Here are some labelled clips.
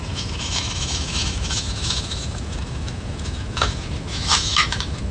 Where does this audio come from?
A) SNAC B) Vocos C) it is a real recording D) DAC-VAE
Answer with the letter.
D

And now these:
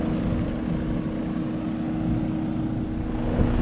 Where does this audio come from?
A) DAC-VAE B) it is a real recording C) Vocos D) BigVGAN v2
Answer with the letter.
B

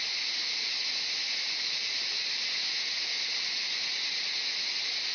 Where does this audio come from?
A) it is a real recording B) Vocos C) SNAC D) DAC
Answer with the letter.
A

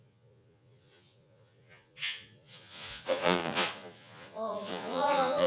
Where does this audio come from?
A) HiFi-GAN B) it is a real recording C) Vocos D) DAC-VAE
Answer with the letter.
C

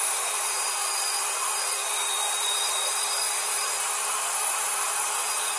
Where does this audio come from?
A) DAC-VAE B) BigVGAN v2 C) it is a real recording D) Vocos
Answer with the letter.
B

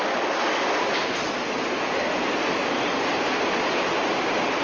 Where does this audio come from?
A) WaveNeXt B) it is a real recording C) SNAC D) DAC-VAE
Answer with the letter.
B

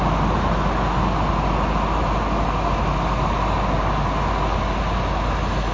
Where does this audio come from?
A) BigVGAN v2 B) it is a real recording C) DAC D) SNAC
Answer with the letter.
B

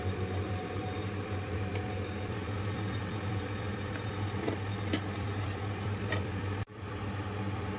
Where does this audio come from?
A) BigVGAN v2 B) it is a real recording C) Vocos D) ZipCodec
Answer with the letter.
A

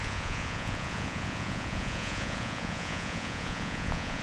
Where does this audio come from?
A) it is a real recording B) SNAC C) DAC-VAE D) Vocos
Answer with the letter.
D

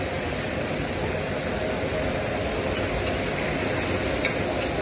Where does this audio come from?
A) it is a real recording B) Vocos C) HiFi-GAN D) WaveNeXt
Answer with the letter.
A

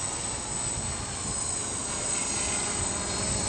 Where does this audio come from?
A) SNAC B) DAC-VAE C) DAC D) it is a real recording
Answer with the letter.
D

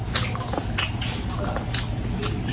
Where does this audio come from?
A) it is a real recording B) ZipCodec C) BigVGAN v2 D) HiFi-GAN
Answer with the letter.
A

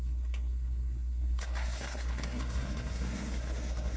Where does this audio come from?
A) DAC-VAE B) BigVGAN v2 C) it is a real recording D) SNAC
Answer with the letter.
D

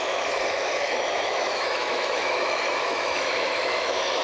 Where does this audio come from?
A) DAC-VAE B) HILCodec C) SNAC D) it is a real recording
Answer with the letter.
A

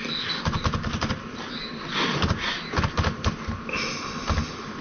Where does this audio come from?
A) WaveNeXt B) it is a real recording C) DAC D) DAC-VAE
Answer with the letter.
B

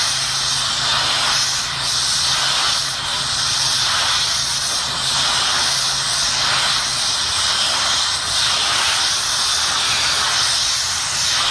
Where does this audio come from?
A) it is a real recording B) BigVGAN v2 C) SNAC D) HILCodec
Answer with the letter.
A